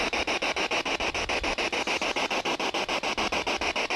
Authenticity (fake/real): real